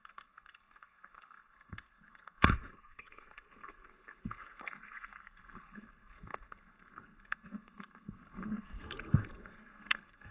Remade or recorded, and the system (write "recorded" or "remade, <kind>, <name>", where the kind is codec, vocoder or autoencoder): remade, codec, SNAC